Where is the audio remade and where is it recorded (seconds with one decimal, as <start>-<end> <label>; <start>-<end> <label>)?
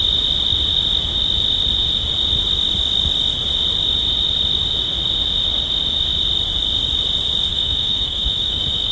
0.0-7.5 recorded; 7.5-8.9 remade